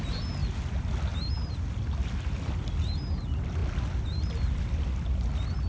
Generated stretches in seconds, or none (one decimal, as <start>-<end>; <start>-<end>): none